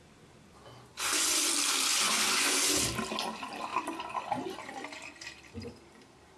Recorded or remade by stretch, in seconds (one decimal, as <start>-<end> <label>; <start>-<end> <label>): 0.0-0.9 recorded; 0.9-1.4 remade; 1.4-1.9 recorded; 1.9-2.6 remade; 2.6-6.4 recorded